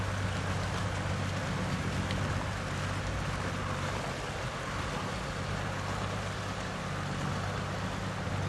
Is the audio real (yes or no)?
yes